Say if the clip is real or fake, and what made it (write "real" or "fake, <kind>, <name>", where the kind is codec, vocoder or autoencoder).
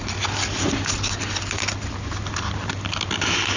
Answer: real